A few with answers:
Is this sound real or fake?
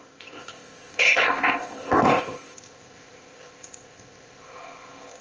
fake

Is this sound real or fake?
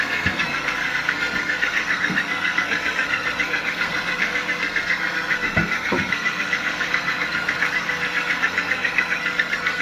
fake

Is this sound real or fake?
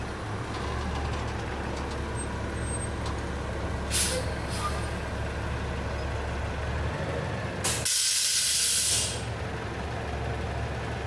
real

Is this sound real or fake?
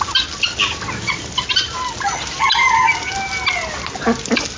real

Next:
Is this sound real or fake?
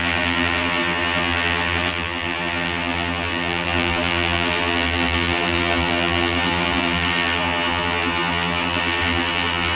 fake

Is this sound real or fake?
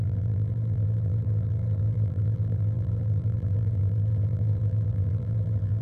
fake